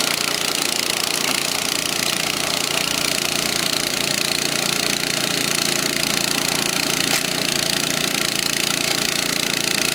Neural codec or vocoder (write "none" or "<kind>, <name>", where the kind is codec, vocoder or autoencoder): vocoder, BigVGAN v2